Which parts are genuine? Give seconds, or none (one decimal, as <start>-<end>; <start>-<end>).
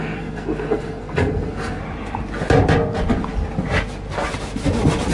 1.8-5.1